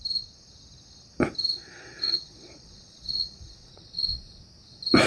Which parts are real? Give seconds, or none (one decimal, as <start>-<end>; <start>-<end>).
0.0-1.4; 4.2-5.1